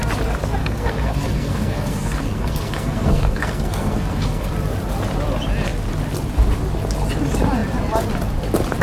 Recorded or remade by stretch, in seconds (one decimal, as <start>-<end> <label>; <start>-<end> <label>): 0.0-0.6 recorded; 0.6-4.5 remade; 4.5-8.8 recorded